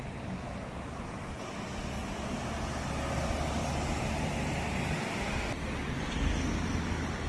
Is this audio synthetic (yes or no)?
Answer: no